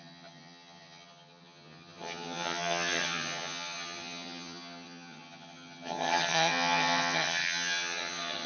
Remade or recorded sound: remade